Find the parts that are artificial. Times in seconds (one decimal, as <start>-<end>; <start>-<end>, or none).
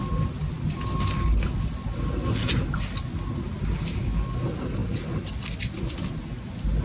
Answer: none